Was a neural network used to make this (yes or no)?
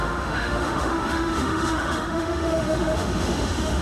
yes